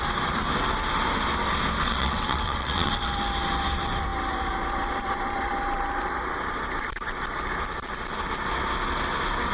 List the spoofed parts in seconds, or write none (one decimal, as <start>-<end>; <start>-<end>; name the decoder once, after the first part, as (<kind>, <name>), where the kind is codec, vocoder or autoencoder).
1.9-2.9 (vocoder, WaveNeXt)